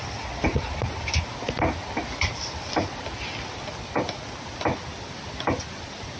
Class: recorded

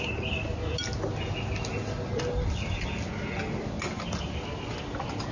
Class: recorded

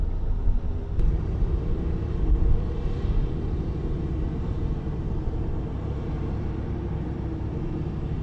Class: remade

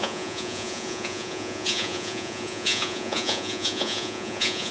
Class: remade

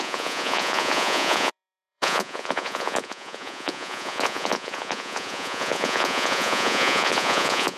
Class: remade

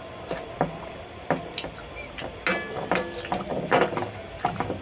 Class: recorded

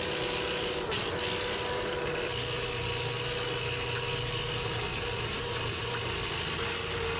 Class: recorded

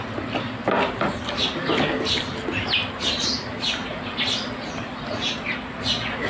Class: recorded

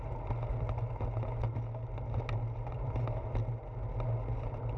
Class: recorded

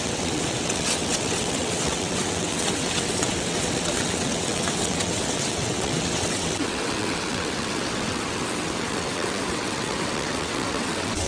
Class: remade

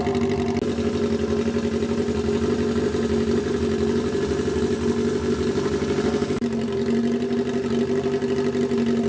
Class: recorded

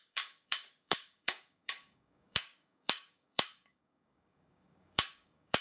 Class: remade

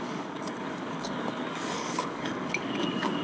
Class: remade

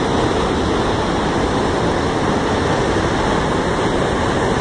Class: recorded